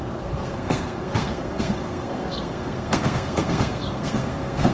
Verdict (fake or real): fake